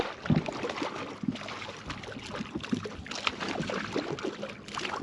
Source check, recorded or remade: recorded